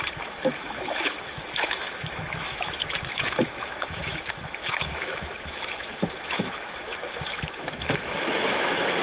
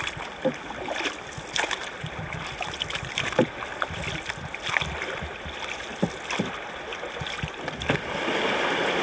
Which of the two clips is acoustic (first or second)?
second